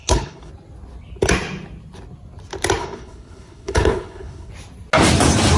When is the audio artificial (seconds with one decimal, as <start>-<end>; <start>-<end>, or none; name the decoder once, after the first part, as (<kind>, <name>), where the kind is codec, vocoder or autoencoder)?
0.0-0.5 (codec, HILCodec); 2.8-4.5